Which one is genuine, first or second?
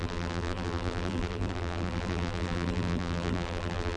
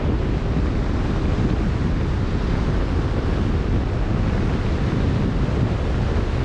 second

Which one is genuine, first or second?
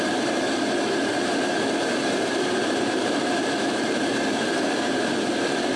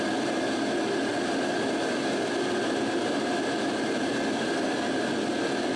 second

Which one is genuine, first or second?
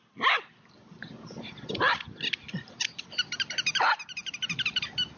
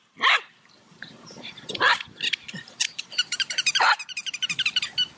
first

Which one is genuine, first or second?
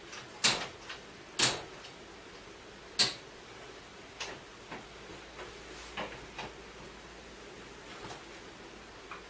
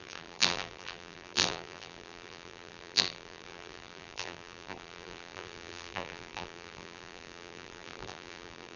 first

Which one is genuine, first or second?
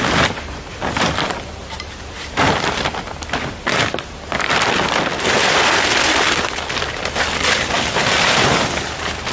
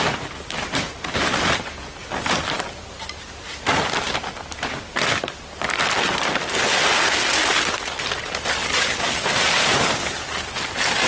second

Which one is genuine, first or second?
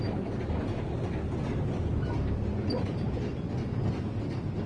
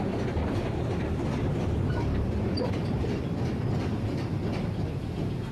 first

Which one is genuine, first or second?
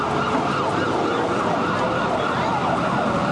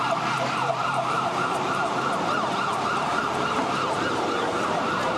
first